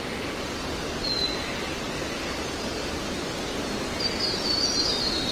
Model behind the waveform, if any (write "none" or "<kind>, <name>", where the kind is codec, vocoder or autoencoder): none